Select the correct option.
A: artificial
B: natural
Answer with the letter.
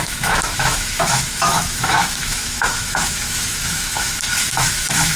A